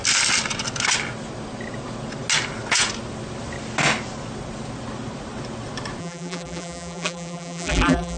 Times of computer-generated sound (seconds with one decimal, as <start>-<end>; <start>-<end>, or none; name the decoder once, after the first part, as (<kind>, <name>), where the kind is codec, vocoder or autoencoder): 6.0-8.2 (vocoder, BigVGAN v2)